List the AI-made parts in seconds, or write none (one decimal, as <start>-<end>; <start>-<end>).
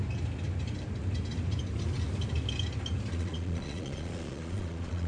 3.1-5.1